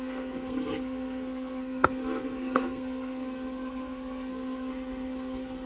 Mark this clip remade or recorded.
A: remade